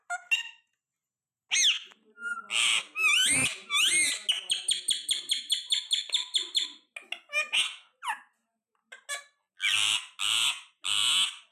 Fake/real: real